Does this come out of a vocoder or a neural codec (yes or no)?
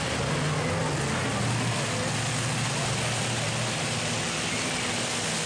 no